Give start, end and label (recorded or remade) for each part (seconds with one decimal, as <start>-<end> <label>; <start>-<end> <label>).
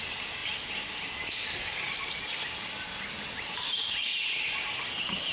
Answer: 0.0-5.3 recorded